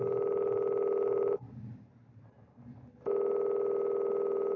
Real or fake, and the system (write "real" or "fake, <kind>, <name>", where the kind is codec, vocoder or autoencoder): real